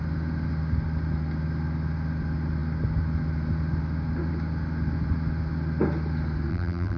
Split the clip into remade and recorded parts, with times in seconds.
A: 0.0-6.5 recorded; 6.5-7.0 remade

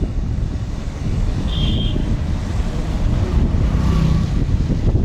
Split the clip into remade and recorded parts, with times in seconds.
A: 0.0-2.0 remade; 2.0-5.0 recorded

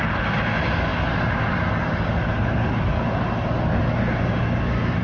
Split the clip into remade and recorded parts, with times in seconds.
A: 0.0-5.0 recorded

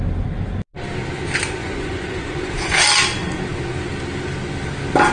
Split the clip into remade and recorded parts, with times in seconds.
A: 0.0-1.6 recorded; 1.6-2.8 remade; 2.8-5.1 recorded